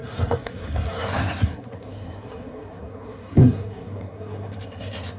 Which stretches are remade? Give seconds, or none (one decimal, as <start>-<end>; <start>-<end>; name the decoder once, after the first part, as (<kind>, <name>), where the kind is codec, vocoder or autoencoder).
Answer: 0.0-5.2 (codec, SNAC)